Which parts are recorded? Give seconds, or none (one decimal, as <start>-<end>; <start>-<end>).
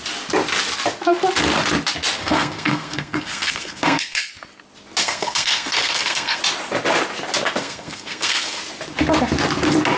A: 0.0-2.2; 4.3-5.0; 6.4-7.6; 8.6-10.0